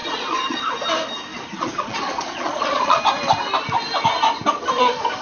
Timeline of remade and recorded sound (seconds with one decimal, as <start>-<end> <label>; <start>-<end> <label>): 0.0-0.7 remade; 0.7-1.3 recorded; 1.3-3.0 remade; 3.0-5.2 recorded

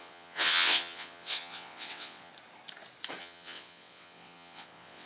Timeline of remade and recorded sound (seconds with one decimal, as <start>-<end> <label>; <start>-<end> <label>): 0.0-2.3 remade; 2.3-3.2 recorded; 3.2-5.1 remade